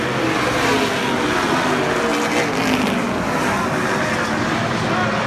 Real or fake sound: real